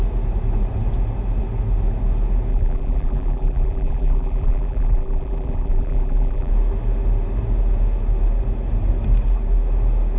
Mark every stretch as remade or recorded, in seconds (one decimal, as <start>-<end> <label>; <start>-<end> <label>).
0.0-2.5 recorded; 2.5-6.5 remade; 6.5-10.2 recorded

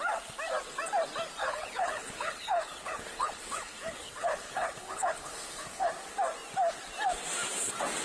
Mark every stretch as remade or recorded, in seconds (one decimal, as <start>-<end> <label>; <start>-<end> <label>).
0.0-1.4 recorded; 1.4-5.9 remade; 5.9-8.0 recorded

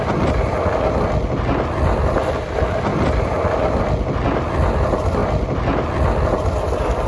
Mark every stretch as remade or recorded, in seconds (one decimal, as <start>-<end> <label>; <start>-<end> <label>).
0.0-7.1 recorded

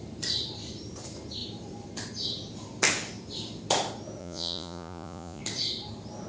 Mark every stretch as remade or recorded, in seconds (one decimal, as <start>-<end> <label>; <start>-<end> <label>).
0.0-4.2 recorded; 4.2-5.4 remade; 5.4-6.3 recorded

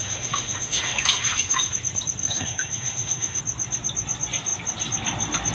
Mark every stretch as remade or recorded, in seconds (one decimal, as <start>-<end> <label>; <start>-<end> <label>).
0.0-1.7 remade; 1.7-2.2 recorded; 2.2-3.4 remade; 3.4-5.5 recorded

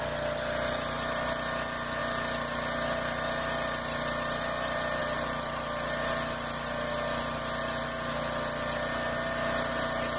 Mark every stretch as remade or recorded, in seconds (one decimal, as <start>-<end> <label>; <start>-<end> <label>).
0.0-10.2 recorded

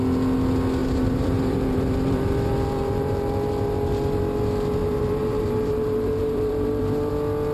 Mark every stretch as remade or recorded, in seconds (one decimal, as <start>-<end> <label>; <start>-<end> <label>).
0.0-0.8 recorded; 0.8-4.2 remade; 4.2-4.8 recorded; 4.8-7.1 remade; 7.1-7.5 recorded

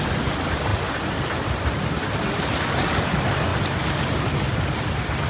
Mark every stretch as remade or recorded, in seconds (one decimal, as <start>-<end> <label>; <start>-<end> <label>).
0.0-5.3 recorded